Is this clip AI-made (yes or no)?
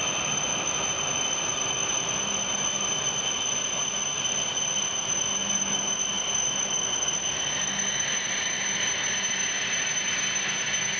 no